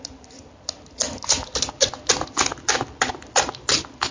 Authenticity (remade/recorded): recorded